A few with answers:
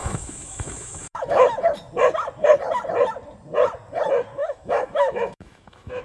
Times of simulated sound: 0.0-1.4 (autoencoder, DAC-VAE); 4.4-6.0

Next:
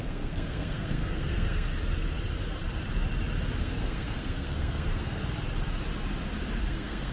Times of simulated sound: 0.0-1.7 (codec, SNAC); 3.6-5.2; 6.6-7.1

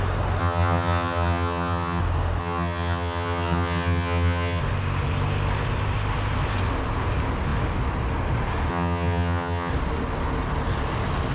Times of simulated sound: 0.4-2.0 (vocoder, HiFi-GAN); 2.4-4.6; 8.7-9.7

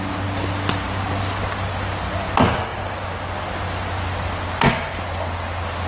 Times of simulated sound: none